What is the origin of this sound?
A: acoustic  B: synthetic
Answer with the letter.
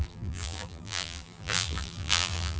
B